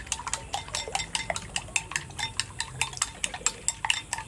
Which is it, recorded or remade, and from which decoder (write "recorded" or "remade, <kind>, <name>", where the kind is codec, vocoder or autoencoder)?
recorded